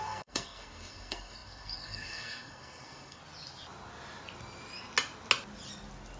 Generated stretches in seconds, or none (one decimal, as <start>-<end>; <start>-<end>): 0.0-3.2